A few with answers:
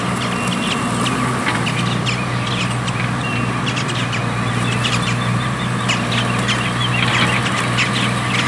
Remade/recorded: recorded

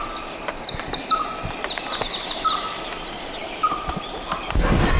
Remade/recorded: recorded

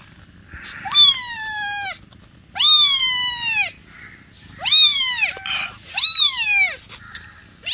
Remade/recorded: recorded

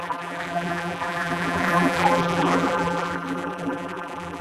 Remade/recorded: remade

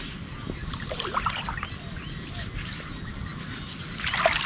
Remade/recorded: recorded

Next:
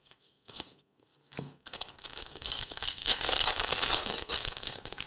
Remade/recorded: remade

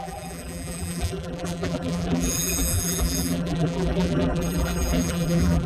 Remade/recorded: remade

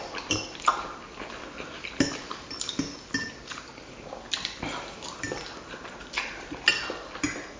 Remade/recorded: recorded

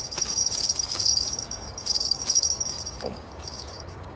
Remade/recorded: remade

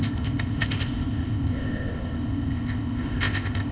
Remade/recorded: remade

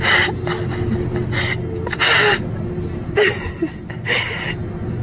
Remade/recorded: recorded